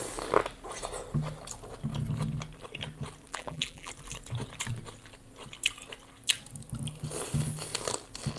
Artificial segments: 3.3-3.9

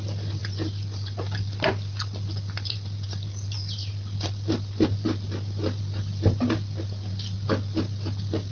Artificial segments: none

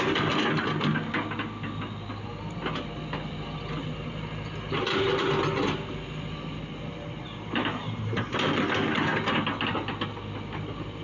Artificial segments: none